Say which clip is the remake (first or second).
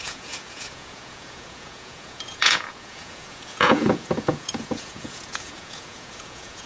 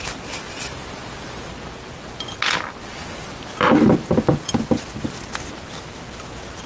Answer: first